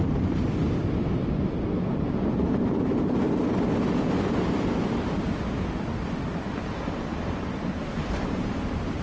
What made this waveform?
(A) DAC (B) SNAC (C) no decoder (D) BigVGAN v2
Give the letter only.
C